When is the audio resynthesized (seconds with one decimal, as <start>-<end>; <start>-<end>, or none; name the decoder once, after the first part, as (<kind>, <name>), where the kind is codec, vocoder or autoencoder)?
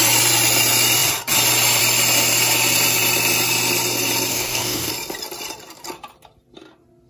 4.3-4.9 (codec, DAC)